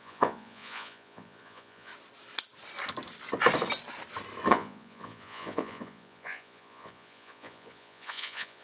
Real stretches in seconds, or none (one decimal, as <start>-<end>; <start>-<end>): 1.9-4.5